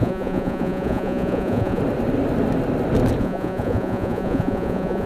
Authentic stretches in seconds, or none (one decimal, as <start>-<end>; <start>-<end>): 1.8-3.2